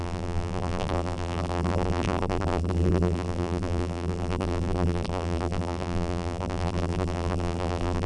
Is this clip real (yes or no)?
no